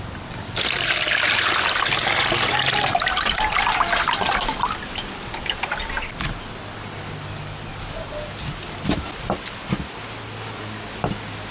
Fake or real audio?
real